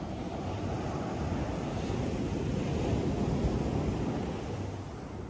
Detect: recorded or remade recorded